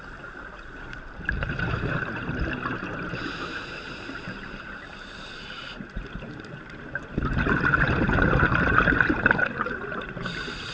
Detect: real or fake fake